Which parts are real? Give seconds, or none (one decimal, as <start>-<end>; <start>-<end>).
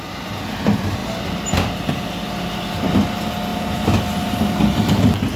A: 0.0-3.5; 5.0-5.4